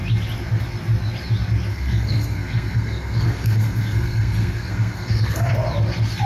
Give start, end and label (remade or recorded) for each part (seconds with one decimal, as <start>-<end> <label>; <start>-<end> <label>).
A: 0.0-1.7 recorded; 1.7-5.5 remade; 5.5-6.3 recorded